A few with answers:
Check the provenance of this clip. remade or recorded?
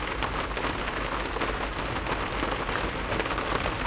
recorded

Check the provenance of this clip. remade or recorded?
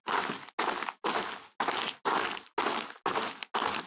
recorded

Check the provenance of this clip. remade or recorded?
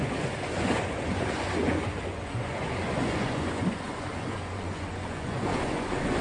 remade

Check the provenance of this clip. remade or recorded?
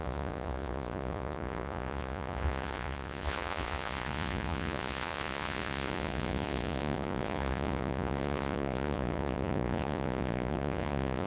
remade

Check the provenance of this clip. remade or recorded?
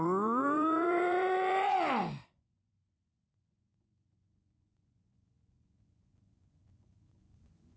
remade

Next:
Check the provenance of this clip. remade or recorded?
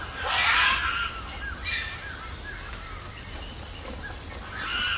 recorded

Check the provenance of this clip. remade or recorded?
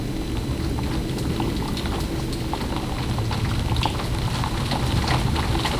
recorded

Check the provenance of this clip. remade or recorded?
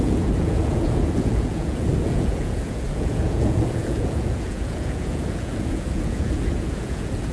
remade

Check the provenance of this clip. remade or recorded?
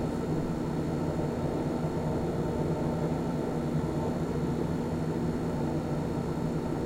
recorded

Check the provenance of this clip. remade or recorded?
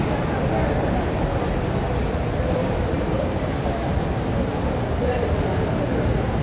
recorded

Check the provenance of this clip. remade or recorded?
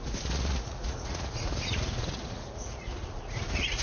remade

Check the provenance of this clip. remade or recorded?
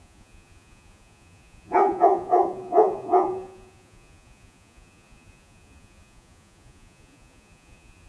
remade